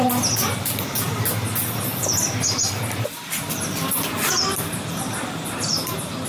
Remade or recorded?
recorded